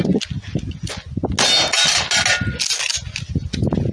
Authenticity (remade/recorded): recorded